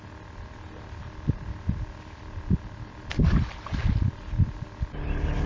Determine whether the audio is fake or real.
real